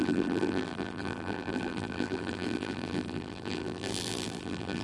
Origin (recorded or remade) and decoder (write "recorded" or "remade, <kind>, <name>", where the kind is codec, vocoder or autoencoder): remade, vocoder, BigVGAN v2